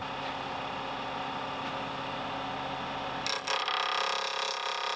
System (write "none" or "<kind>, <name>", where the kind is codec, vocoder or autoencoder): none